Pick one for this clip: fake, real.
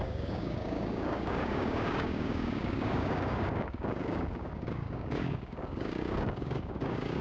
fake